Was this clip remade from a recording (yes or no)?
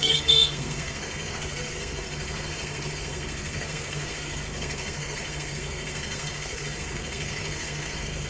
yes